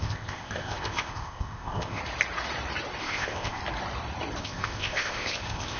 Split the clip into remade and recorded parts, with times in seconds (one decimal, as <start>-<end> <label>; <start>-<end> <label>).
0.0-2.0 remade; 2.0-3.0 recorded; 3.0-3.6 remade; 3.6-4.4 recorded; 4.4-5.8 remade